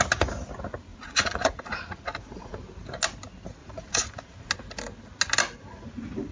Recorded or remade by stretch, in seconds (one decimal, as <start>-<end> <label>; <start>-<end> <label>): 0.0-0.9 recorded; 0.9-2.5 remade; 2.5-3.6 recorded; 3.6-4.5 remade; 4.5-6.3 recorded